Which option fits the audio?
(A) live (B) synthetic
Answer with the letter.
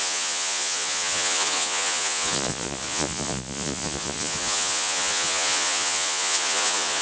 B